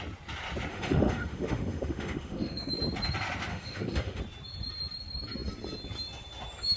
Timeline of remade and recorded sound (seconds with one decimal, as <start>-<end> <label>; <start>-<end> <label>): 0.0-0.7 recorded; 0.7-2.7 remade; 2.7-3.5 recorded; 3.5-4.2 remade; 4.2-6.8 recorded